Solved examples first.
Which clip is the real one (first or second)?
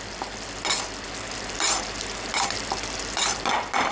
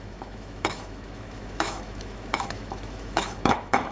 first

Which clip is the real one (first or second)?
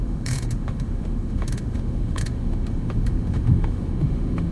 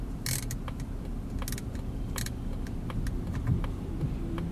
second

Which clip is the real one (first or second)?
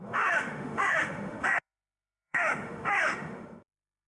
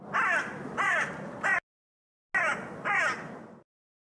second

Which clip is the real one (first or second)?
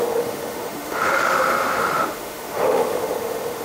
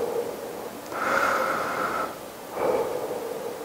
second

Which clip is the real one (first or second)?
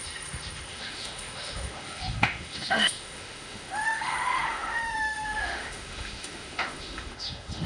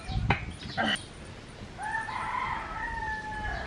second